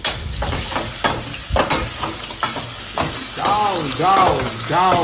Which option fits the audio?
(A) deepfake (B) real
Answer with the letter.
B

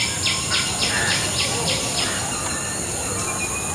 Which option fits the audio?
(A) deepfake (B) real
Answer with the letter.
B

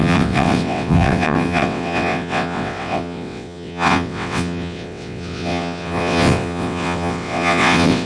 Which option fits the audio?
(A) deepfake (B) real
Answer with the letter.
A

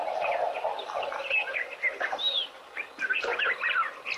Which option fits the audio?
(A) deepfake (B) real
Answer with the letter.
B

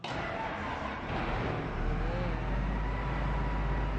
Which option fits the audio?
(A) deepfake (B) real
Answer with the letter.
B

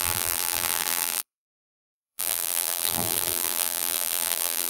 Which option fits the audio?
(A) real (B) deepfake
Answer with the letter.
B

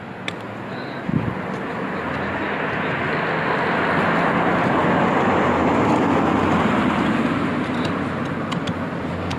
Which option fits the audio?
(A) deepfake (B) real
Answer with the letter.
B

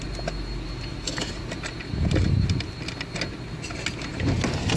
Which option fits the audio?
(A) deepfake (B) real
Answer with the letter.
B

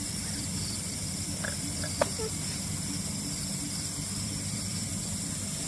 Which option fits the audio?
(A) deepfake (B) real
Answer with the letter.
A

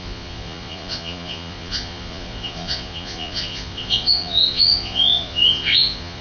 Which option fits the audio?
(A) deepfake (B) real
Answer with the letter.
A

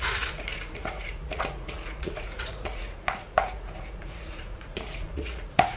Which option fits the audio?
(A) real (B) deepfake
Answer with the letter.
B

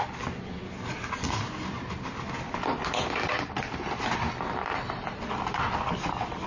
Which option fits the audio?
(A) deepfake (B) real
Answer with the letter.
B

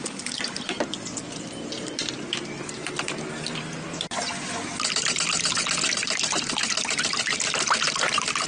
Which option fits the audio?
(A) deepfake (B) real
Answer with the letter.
B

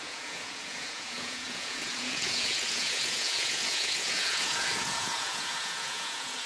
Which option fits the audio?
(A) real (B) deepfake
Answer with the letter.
B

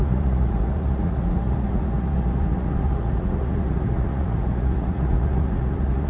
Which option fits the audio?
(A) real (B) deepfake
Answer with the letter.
B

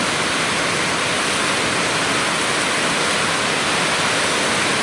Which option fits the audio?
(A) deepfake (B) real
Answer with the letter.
B